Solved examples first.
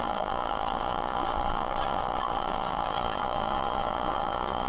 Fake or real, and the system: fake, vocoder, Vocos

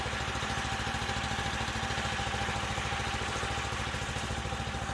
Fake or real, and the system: real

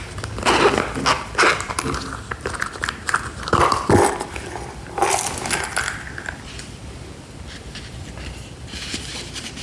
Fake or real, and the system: real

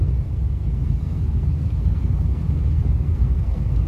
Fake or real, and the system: fake, codec, SNAC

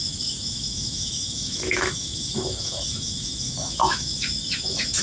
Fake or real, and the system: fake, autoencoder, DAC-VAE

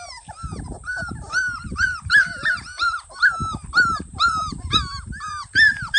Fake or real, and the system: fake, vocoder, BigVGAN v2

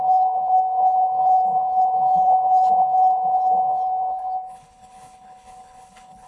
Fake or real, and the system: fake, codec, HILCodec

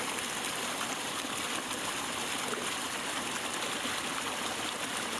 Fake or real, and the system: real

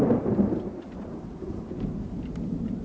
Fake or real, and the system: fake, vocoder, BigVGAN v2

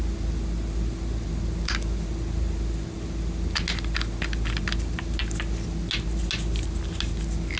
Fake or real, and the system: real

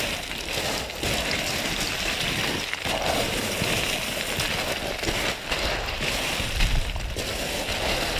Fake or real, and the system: real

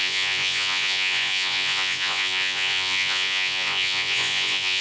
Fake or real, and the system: fake, vocoder, Vocos